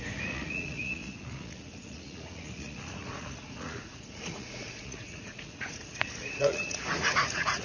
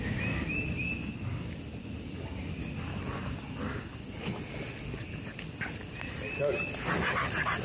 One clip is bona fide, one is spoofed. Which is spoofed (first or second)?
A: first